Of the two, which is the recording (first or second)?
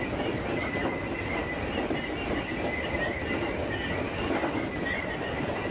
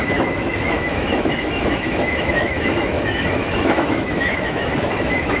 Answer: first